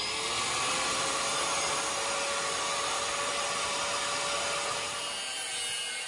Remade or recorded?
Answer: recorded